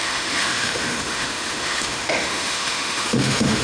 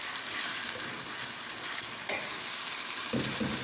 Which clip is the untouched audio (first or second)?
second